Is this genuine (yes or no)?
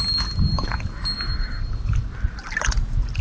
yes